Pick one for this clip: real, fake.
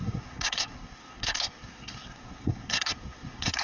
fake